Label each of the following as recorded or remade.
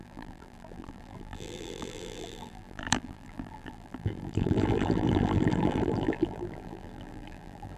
remade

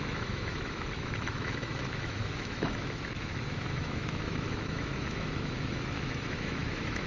remade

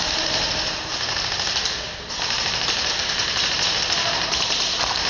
recorded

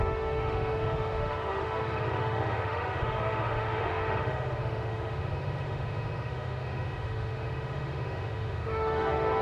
remade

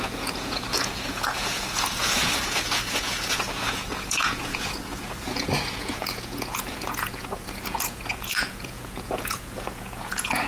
remade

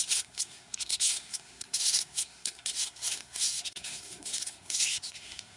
remade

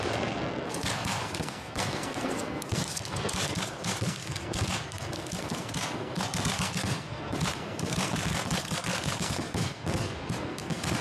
remade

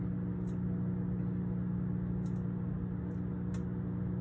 recorded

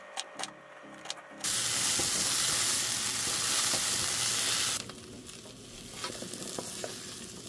recorded